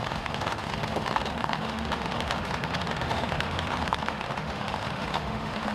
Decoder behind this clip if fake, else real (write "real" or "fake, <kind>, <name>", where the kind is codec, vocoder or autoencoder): fake, autoencoder, DAC-VAE